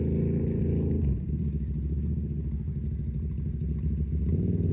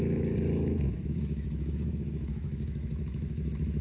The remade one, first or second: second